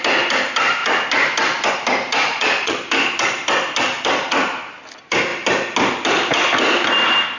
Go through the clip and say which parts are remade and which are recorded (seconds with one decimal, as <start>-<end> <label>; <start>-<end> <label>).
0.0-2.3 recorded; 2.3-2.8 remade; 2.8-7.4 recorded